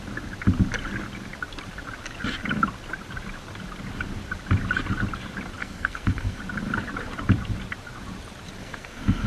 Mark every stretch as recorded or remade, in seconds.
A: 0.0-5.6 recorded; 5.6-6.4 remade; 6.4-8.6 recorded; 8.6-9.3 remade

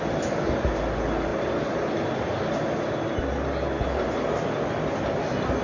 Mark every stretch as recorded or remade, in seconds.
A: 0.0-5.6 recorded